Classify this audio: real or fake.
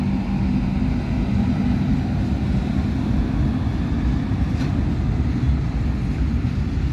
real